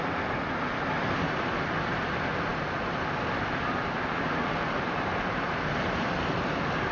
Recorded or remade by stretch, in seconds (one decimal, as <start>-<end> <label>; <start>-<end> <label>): 0.0-6.9 recorded